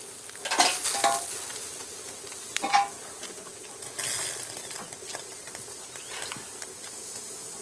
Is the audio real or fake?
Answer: real